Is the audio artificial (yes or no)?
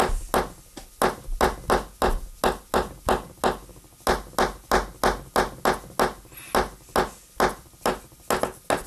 no